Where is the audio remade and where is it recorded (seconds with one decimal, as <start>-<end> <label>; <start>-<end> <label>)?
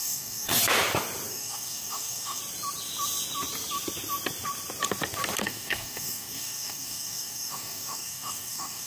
0.0-0.5 remade; 0.5-1.3 recorded; 1.3-2.4 remade; 2.4-5.4 recorded; 5.4-8.9 remade